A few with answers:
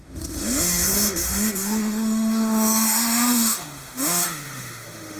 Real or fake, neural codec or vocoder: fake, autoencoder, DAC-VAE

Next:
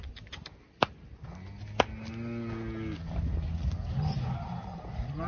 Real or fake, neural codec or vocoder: real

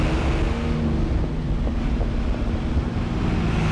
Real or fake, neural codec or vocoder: real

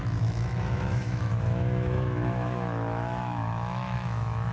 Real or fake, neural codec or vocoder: fake, autoencoder, DAC-VAE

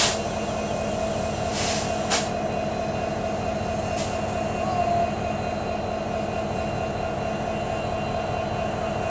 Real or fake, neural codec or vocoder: real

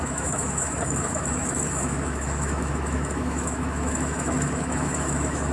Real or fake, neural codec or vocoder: fake, autoencoder, DAC-VAE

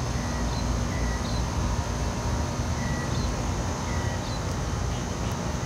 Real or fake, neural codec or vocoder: real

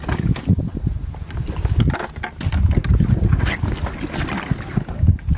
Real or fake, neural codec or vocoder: real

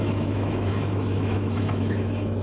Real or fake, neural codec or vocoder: fake, autoencoder, DAC-VAE